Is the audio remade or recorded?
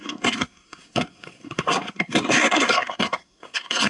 remade